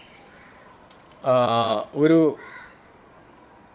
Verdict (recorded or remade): remade